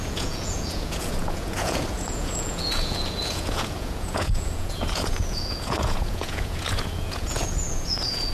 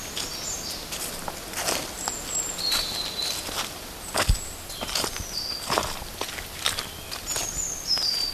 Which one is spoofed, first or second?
first